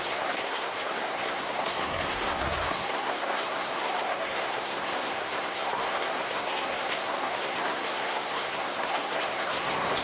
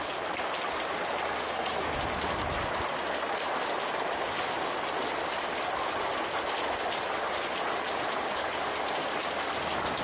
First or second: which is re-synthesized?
first